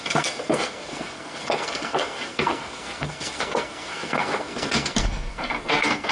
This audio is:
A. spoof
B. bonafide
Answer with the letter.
A